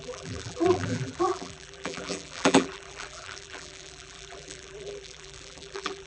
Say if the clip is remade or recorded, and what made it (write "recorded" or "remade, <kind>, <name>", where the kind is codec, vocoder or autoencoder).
remade, vocoder, BigVGAN v2